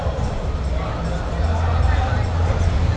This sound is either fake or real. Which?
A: real